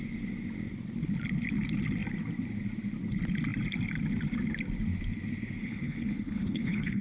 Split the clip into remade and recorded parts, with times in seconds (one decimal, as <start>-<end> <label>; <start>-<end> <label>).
0.0-5.6 recorded; 5.6-7.0 remade